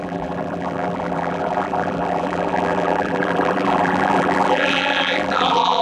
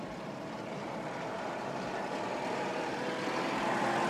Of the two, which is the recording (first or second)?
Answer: second